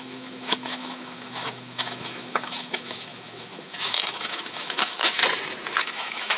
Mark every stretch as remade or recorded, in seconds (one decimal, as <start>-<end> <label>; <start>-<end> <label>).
0.0-5.2 remade; 5.2-5.8 recorded; 5.8-6.4 remade